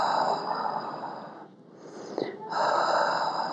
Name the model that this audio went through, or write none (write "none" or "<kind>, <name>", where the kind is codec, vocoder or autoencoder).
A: none